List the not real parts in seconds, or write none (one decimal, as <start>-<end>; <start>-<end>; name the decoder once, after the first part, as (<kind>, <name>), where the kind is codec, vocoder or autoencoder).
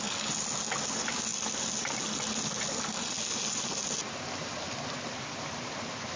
none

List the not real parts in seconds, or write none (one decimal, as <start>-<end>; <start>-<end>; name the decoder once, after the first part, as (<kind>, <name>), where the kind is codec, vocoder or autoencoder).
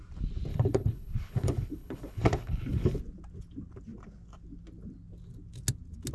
0.5-3.0 (codec, HILCodec)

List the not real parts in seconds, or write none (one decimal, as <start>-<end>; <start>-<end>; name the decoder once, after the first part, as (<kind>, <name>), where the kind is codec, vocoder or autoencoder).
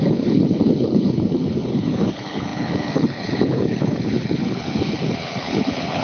0.0-6.0 (codec, HILCodec)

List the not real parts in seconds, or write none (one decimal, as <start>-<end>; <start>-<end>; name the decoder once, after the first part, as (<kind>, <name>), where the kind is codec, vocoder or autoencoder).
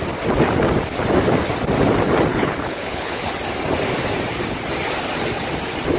2.3-3.3 (codec, HILCodec)